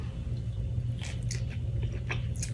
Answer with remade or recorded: recorded